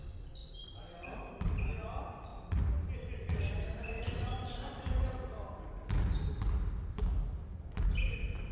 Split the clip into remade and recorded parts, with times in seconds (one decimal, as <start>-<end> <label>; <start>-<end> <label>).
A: 0.0-8.5 recorded

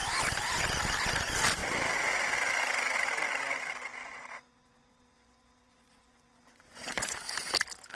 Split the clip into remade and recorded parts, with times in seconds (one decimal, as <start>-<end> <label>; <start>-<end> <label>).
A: 0.0-4.0 recorded; 4.0-7.5 remade; 7.5-8.0 recorded

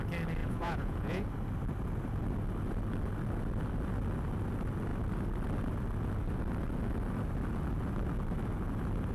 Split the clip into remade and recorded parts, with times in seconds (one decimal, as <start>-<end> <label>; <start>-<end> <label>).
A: 0.0-0.4 recorded; 0.4-1.3 remade; 1.3-9.1 recorded

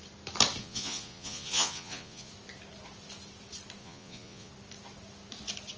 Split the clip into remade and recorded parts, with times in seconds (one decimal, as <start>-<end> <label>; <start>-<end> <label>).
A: 0.0-0.6 recorded; 0.6-2.3 remade; 2.3-3.8 recorded; 3.8-4.5 remade; 4.5-5.8 recorded

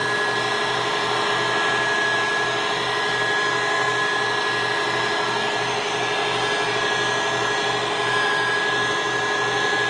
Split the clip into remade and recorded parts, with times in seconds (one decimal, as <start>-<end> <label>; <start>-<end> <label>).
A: 0.0-9.9 recorded

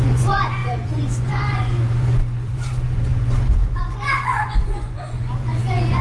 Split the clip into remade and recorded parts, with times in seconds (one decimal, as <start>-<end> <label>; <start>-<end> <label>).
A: 0.0-6.0 remade